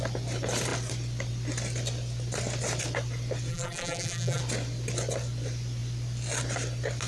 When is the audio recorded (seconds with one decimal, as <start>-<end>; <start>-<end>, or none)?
0.0-3.5; 4.4-7.1